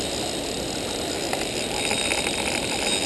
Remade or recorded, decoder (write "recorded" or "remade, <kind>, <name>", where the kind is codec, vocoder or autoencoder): recorded